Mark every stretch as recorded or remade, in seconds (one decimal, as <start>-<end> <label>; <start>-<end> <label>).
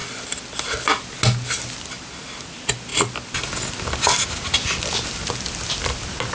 0.0-6.3 recorded